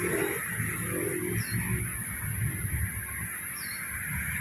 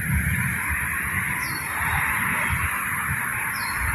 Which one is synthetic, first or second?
second